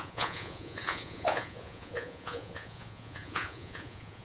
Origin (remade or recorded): remade